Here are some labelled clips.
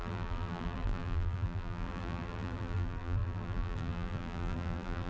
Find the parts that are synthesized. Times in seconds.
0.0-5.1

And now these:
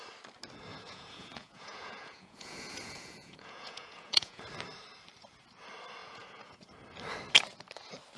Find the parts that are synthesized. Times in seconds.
0.7-4.4; 6.0-6.6

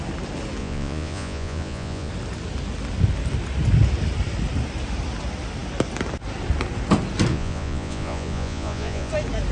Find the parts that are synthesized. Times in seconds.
0.6-2.1; 7.3-9.1